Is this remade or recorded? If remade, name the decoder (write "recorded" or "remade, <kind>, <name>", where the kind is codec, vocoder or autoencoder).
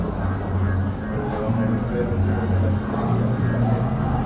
recorded